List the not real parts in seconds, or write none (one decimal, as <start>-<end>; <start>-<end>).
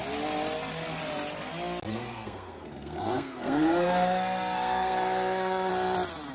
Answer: 1.9-5.7